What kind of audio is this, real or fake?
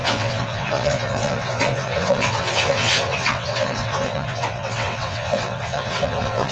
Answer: fake